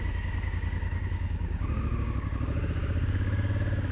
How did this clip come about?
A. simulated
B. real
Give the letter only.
A